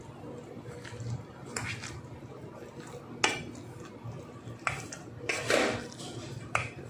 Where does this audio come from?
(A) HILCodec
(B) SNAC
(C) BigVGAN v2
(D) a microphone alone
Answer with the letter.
D